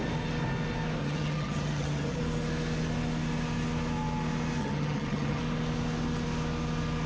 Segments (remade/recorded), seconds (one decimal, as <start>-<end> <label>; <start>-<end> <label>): 0.0-1.0 recorded; 1.0-2.2 remade; 2.2-4.6 recorded; 4.6-5.4 remade; 5.4-7.1 recorded